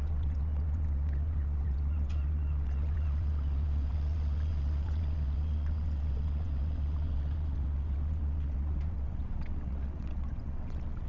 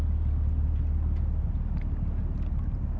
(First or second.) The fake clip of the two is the first